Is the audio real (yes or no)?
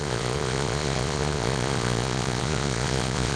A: no